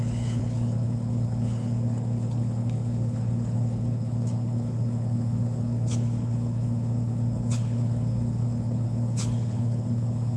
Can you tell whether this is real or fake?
fake